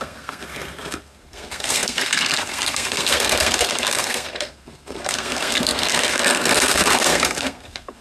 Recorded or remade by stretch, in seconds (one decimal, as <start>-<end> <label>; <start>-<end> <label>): 0.0-8.0 remade